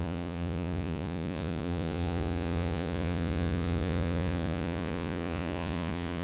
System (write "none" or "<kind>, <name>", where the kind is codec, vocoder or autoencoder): vocoder, Vocos